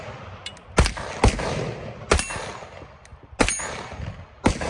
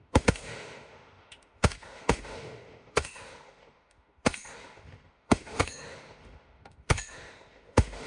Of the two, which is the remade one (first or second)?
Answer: second